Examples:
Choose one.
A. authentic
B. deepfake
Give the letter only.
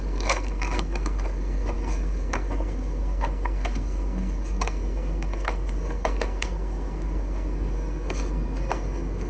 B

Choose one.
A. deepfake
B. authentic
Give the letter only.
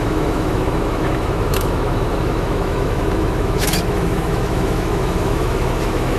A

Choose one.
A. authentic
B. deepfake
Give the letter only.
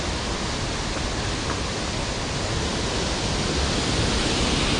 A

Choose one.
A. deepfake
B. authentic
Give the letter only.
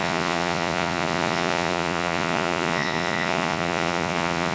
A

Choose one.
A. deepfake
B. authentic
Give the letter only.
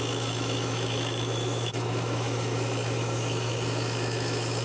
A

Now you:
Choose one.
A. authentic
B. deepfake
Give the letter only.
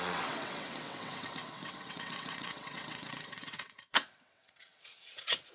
B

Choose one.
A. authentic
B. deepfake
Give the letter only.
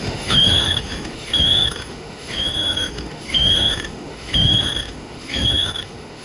B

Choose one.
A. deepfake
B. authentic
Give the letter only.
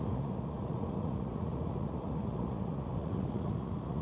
A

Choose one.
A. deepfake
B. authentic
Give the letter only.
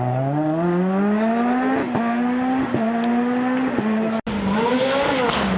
B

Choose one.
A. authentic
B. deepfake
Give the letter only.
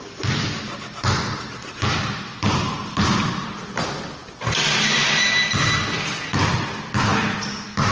A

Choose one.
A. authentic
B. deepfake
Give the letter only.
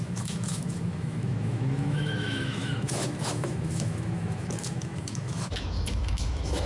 B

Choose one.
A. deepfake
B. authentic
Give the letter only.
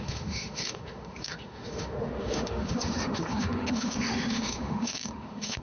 A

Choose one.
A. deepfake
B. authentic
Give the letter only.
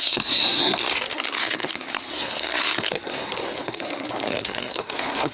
A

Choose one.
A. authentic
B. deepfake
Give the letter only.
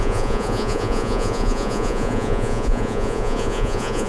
B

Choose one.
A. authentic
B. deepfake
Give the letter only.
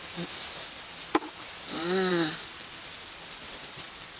A